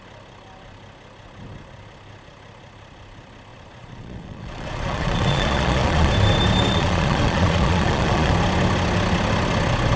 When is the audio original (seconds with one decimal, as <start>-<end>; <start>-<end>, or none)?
0.0-3.5; 6.1-6.7; 8.3-10.0